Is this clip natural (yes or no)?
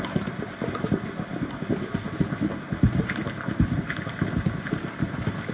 yes